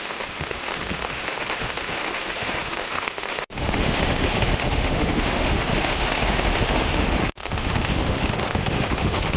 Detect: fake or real fake